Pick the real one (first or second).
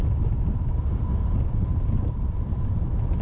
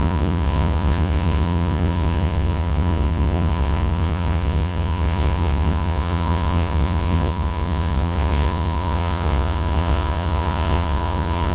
first